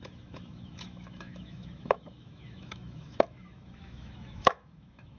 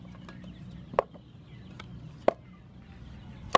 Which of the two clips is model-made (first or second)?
first